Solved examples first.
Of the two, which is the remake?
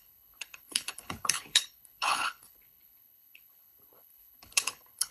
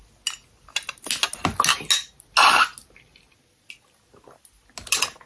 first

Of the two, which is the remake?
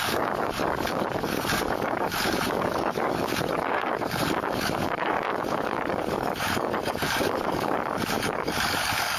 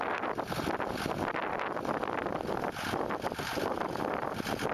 first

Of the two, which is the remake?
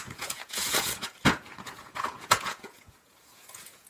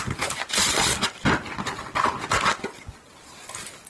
first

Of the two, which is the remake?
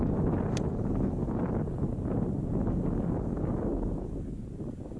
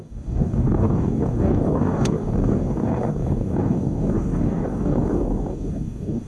second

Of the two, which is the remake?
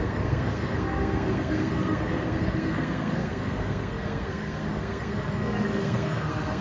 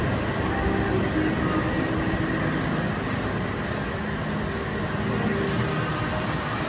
first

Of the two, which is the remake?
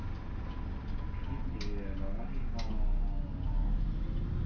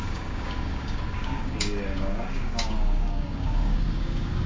second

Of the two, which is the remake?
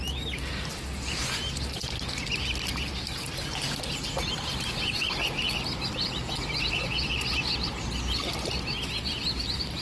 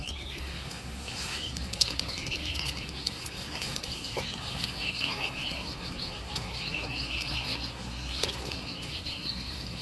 second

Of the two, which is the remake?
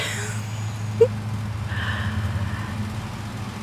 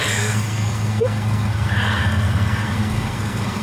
second